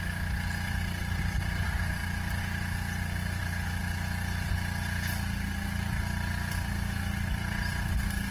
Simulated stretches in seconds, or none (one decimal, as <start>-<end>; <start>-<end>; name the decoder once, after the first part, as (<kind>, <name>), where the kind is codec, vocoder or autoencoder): none